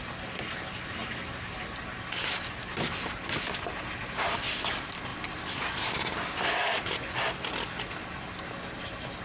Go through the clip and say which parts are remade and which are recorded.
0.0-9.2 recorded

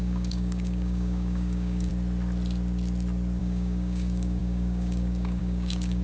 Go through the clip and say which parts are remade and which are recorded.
0.0-1.9 remade; 1.9-3.4 recorded; 3.4-6.0 remade